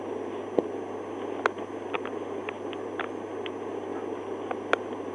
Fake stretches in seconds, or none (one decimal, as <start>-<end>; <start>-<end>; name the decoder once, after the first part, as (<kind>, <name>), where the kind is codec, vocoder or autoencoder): none